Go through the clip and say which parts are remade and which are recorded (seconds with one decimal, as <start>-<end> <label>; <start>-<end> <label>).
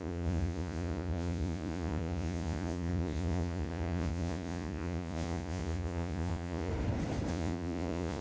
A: 0.0-6.7 remade; 6.7-7.3 recorded; 7.3-8.2 remade